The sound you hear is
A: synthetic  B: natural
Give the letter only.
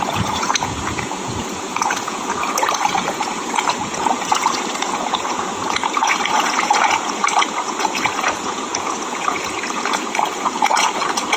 A